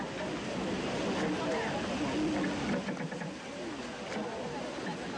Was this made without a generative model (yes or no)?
yes